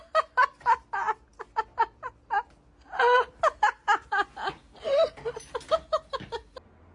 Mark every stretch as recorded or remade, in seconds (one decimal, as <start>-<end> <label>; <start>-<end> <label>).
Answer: 0.0-6.9 recorded